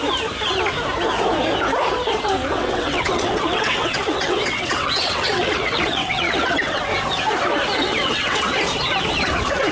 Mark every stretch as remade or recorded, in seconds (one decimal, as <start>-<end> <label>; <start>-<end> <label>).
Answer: 0.0-2.4 recorded; 2.4-6.8 remade; 6.8-7.8 recorded; 7.8-8.4 remade; 8.4-9.7 recorded